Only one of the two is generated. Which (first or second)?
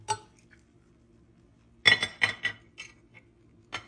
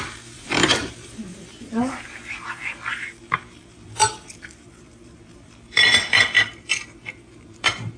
second